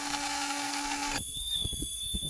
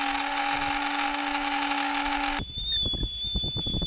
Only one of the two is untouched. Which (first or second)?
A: second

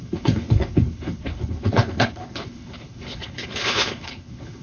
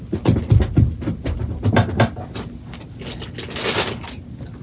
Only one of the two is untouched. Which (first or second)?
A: second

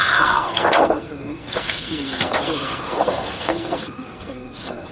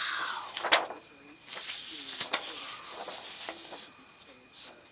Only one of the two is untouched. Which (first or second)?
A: second